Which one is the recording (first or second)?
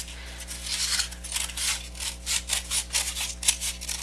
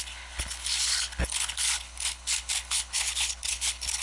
first